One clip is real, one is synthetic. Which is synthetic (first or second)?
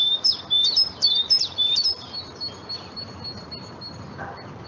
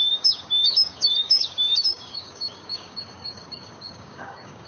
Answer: second